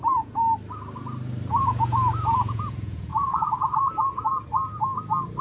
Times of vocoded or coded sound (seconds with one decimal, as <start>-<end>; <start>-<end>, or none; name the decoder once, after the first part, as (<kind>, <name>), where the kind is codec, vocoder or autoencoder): 0.0-0.4 (vocoder, Vocos); 1.5-4.3